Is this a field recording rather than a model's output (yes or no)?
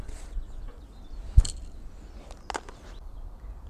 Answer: yes